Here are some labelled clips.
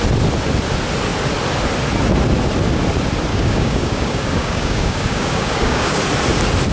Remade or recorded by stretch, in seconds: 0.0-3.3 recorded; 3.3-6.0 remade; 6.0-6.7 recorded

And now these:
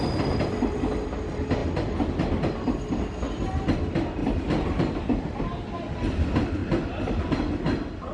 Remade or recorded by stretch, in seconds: 0.0-4.2 recorded; 4.2-5.4 remade; 5.4-6.6 recorded; 6.6-7.3 remade; 7.3-8.1 recorded

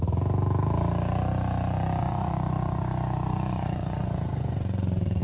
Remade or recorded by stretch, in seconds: 0.0-2.0 recorded; 2.0-5.2 remade

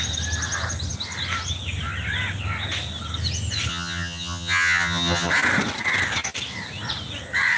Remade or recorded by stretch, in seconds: 0.0-3.7 recorded; 3.7-5.3 remade; 5.3-7.6 recorded

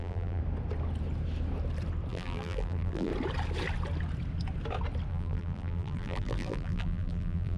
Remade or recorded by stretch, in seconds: 0.0-0.4 remade; 0.4-2.1 recorded; 2.1-3.1 remade; 3.1-5.1 recorded; 5.1-7.6 remade

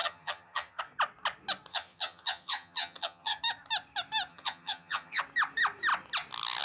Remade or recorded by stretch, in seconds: 0.0-0.8 remade; 0.8-1.7 recorded; 1.7-3.4 remade; 3.4-4.3 recorded; 4.3-5.2 remade; 5.2-6.6 recorded

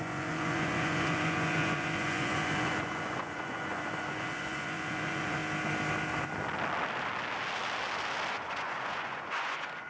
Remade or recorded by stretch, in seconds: 0.0-5.4 remade; 5.4-8.3 recorded; 8.3-9.9 remade